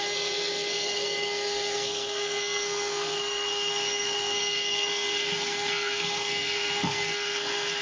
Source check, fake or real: fake